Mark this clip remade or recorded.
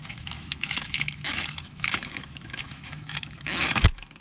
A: remade